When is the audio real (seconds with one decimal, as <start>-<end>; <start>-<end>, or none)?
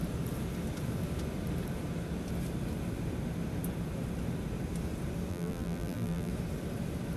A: 0.0-5.3; 6.3-7.2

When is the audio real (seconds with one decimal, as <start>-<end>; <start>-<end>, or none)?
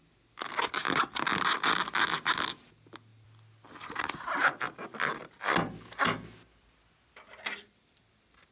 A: 0.0-8.5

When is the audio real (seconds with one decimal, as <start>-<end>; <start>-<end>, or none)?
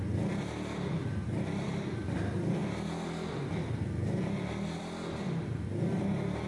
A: 0.0-6.5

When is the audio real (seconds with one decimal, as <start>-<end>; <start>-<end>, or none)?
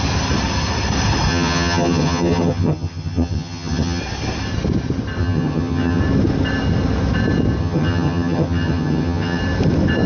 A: 0.0-1.3; 4.0-5.2; 6.0-7.6; 9.4-10.1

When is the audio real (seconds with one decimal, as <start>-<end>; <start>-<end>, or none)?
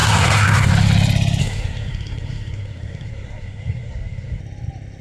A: 0.7-1.4; 4.4-5.0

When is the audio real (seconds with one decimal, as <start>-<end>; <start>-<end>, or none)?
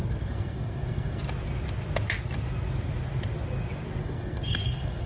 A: 1.2-4.0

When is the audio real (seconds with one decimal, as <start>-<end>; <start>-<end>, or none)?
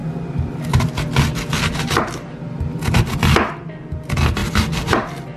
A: 0.0-5.4